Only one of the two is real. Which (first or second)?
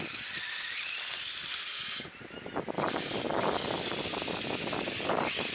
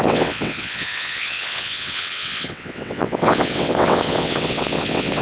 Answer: first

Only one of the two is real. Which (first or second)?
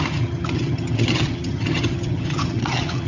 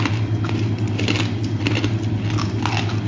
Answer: second